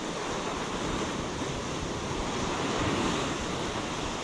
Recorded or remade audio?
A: recorded